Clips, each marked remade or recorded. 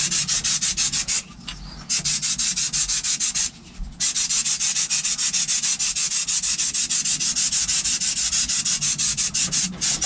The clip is recorded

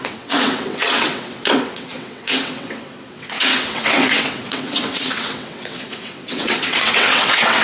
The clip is remade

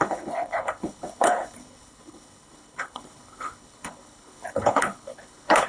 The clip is remade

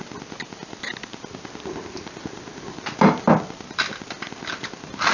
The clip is recorded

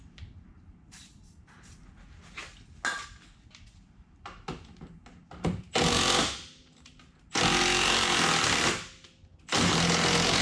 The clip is recorded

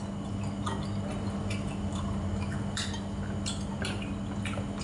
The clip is recorded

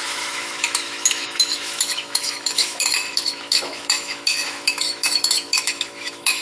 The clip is remade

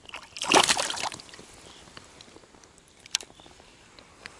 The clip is remade